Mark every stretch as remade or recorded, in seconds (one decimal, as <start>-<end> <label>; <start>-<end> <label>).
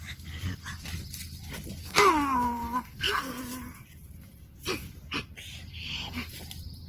0.0-1.8 recorded; 1.8-3.4 remade; 3.4-5.7 recorded; 5.7-6.3 remade; 6.3-6.9 recorded